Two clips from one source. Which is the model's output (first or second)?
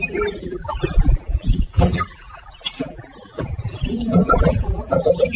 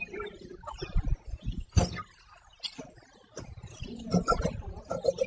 first